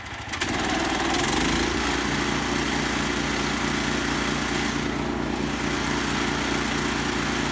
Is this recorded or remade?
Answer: recorded